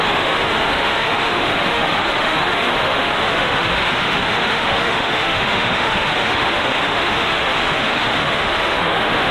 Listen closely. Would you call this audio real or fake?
fake